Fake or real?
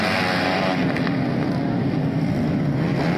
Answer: real